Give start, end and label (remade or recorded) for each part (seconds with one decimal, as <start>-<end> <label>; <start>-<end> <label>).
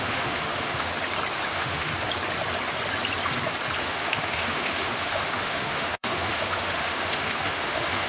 0.0-0.9 remade; 0.9-1.5 recorded; 1.5-1.9 remade; 1.9-3.8 recorded; 3.8-8.1 remade